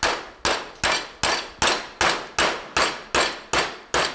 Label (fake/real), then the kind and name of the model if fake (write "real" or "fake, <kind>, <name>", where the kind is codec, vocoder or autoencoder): real